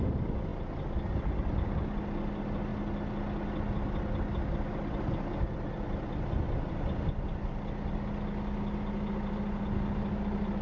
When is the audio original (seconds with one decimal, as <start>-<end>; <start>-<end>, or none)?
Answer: 0.0-10.6